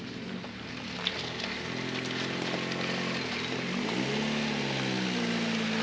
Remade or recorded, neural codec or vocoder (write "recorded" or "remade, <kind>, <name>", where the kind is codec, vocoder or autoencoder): recorded